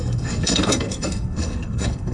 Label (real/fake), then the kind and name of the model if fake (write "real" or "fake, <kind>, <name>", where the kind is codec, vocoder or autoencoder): fake, codec, SNAC